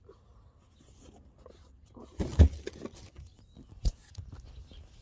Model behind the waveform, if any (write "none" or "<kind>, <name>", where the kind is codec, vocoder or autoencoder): none